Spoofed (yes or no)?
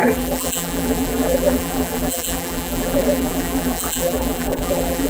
yes